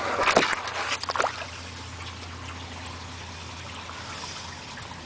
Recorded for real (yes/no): yes